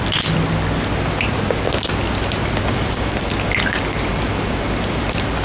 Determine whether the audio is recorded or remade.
recorded